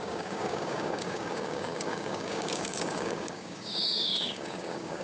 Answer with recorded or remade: remade